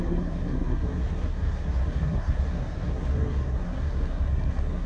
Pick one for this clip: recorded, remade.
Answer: remade